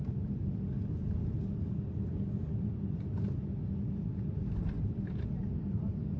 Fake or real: real